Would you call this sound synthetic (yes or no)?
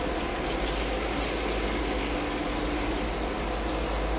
no